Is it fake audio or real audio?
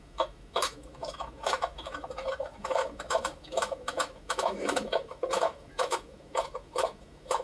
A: fake